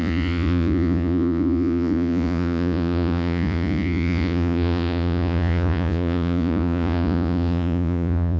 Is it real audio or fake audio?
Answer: fake